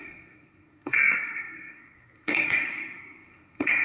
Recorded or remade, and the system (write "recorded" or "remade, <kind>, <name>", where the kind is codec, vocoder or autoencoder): remade, codec, SNAC